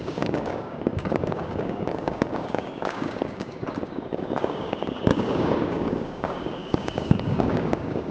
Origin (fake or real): fake